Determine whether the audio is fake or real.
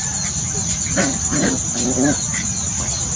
real